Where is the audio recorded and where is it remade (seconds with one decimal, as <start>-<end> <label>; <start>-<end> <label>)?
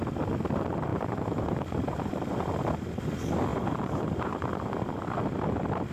0.0-0.9 recorded; 0.9-2.5 remade; 2.5-3.5 recorded; 3.5-4.7 remade; 4.7-5.9 recorded